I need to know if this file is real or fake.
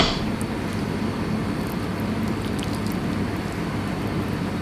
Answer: real